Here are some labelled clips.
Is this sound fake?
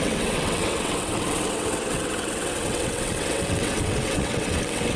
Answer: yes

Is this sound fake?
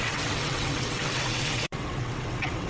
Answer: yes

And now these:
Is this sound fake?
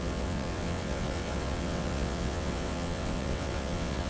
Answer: yes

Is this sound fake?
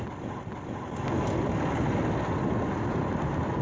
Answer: no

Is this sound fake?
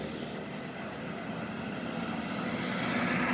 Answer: no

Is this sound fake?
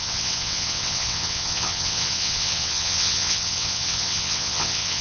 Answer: yes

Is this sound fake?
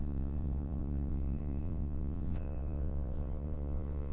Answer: yes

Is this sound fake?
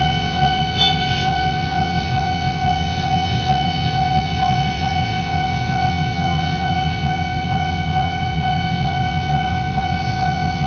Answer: yes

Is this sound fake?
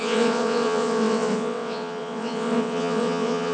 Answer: yes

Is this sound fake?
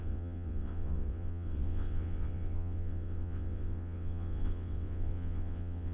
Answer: yes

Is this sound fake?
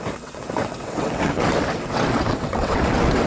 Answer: yes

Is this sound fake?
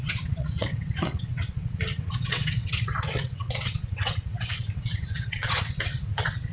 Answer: yes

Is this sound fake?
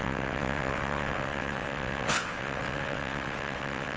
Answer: yes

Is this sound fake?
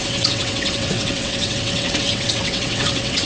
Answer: yes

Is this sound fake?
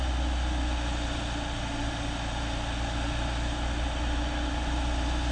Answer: no